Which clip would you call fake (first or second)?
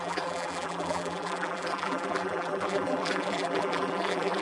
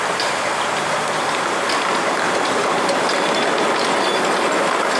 first